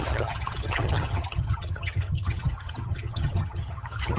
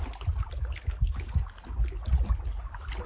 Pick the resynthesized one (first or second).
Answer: first